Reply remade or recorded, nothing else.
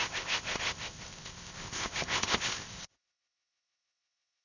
remade